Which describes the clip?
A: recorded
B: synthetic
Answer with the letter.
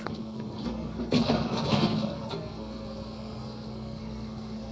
B